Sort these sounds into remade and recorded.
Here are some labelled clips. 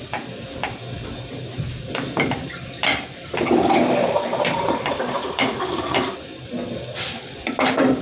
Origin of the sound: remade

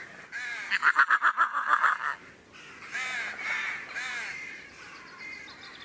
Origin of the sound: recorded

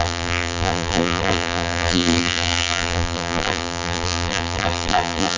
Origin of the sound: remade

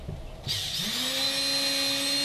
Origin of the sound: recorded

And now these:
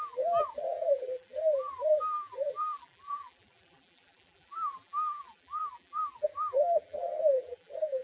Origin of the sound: remade